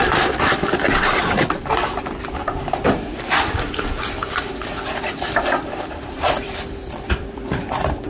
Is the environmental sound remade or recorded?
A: remade